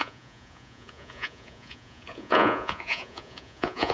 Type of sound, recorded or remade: remade